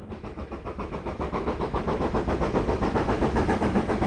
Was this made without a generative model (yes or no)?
no